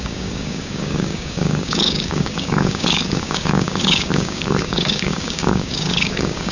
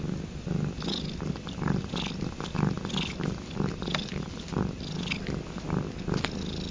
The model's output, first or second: first